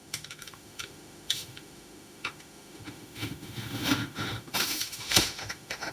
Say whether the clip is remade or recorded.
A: remade